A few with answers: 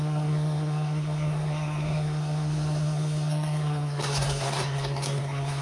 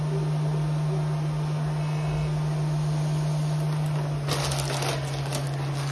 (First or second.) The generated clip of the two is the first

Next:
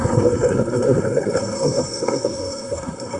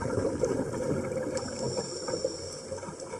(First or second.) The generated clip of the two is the first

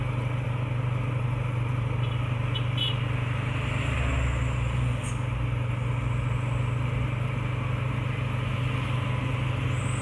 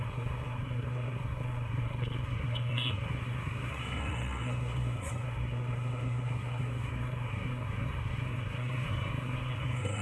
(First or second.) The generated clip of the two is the second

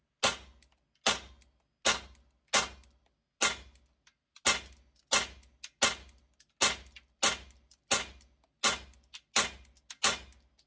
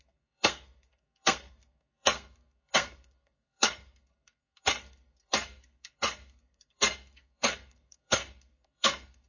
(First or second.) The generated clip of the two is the second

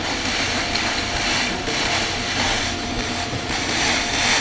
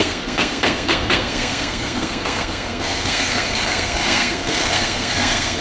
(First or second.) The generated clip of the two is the second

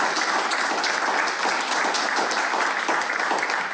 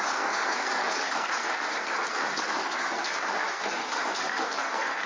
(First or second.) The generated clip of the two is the second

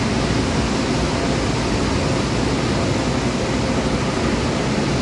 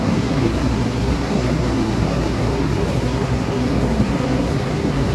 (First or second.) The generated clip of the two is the second